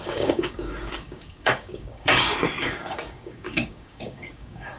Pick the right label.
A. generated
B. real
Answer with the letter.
A